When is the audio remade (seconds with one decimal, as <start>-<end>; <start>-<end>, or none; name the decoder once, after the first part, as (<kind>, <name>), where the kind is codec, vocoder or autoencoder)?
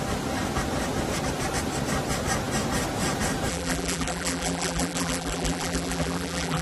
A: 3.5-6.6 (vocoder, BigVGAN v2)